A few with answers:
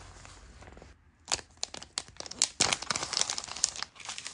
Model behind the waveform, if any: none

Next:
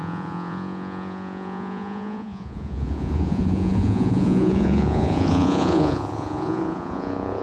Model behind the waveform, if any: vocoder, Vocos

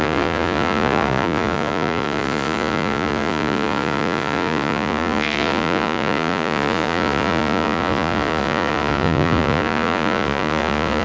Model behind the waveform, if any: vocoder, Vocos